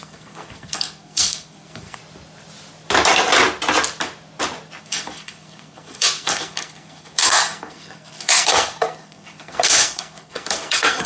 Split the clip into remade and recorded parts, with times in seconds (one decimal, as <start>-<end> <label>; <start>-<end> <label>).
0.0-2.0 remade; 2.0-4.8 recorded; 4.8-11.1 remade